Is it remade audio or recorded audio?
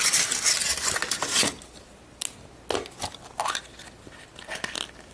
recorded